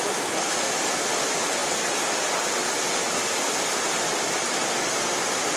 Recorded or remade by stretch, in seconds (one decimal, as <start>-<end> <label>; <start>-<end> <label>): 0.0-5.6 recorded